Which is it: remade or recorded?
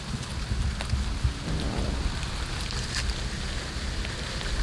recorded